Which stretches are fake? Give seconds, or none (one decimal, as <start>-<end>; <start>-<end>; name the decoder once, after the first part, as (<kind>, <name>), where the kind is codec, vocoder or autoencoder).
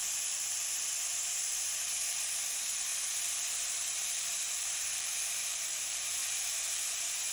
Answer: 0.5-2.9 (vocoder, BigVGAN v2); 3.9-7.3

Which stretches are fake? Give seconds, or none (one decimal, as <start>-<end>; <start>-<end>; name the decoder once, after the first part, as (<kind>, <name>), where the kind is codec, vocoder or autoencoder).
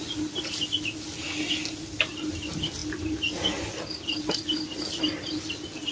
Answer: none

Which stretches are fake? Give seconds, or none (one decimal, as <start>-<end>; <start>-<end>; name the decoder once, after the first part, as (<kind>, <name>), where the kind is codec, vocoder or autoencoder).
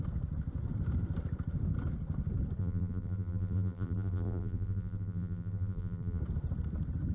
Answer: 2.6-6.2 (vocoder, BigVGAN v2)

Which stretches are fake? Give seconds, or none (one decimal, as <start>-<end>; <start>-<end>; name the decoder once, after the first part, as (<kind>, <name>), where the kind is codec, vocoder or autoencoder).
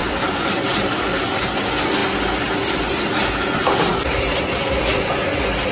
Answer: 0.0-1.3 (vocoder, BigVGAN v2); 2.0-3.3; 3.9-4.9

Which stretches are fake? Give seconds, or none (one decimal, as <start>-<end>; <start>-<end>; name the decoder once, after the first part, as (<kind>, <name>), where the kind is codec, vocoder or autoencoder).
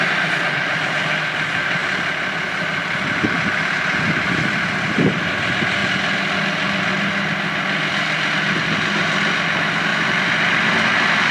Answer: 5.8-8.3 (vocoder, BigVGAN v2); 9.9-10.7